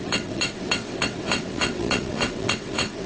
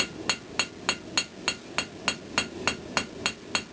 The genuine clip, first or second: second